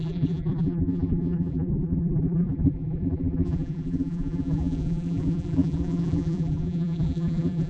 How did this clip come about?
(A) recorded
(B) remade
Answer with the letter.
B